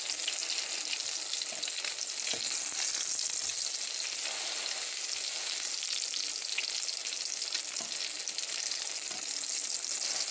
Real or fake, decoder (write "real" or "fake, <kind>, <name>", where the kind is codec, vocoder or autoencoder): real